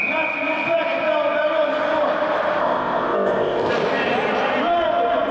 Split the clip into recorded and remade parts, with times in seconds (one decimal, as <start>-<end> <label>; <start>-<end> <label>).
0.0-2.6 recorded; 2.6-3.7 remade; 3.7-5.3 recorded